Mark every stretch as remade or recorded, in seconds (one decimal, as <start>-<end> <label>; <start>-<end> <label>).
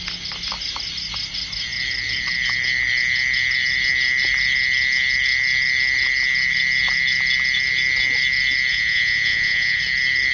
0.0-8.7 recorded; 8.7-9.8 remade; 9.8-10.3 recorded